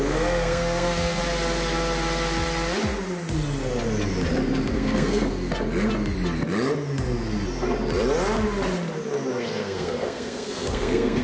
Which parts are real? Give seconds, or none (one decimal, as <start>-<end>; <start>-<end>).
1.2-4.7; 5.3-9.4